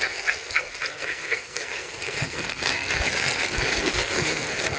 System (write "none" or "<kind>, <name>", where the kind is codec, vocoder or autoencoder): codec, SNAC